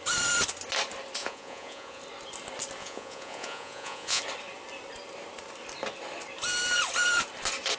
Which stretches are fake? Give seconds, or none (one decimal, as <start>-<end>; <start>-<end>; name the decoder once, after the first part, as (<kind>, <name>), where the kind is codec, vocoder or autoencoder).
1.2-2.0 (vocoder, Vocos); 2.8-4.2